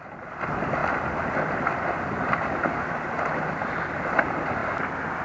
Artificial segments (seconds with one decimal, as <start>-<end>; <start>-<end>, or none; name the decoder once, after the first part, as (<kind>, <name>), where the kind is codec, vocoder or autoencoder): none